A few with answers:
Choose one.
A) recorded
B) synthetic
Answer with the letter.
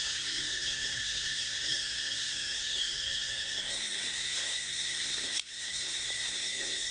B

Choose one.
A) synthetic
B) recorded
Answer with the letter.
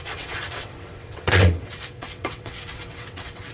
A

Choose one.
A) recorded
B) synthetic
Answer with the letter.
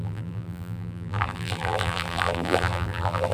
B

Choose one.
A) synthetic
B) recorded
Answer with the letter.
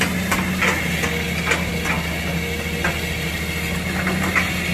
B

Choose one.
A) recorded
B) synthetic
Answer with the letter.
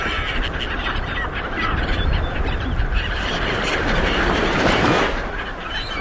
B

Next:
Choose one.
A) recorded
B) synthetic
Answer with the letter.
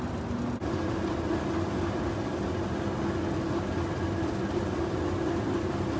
A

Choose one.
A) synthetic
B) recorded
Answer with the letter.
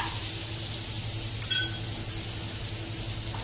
B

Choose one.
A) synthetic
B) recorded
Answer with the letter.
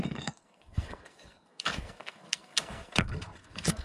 A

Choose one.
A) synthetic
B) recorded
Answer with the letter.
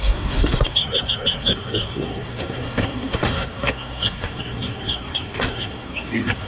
A